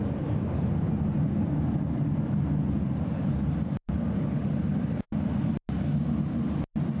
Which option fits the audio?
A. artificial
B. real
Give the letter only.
B